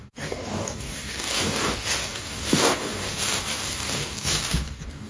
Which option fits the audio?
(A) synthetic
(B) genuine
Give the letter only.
A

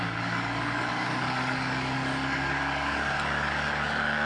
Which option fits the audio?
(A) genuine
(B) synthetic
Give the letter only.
B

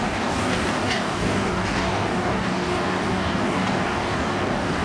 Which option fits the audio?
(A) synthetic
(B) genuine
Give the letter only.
A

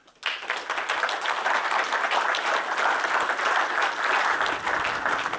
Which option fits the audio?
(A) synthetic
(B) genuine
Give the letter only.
B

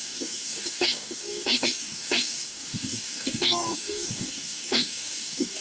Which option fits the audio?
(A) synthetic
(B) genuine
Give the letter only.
A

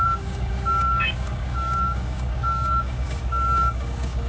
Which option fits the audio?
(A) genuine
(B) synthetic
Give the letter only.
B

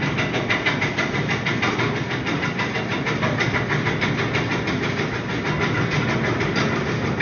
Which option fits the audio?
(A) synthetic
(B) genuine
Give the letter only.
B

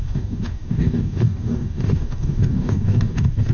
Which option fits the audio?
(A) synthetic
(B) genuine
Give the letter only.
A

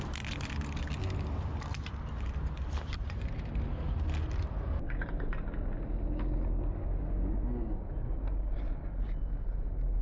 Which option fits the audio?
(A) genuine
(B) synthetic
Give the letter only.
A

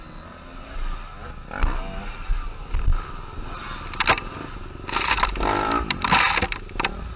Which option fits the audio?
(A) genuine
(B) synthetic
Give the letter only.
A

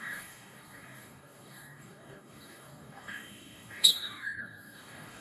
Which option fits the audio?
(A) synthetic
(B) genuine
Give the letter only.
A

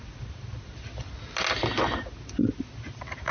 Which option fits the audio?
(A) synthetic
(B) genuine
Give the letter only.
B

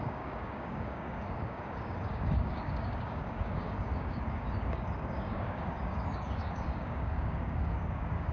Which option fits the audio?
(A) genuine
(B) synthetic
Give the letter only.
B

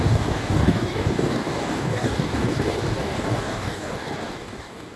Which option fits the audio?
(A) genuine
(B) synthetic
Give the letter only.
B